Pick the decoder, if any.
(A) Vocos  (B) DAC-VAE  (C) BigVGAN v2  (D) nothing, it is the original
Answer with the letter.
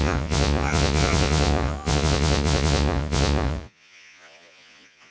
A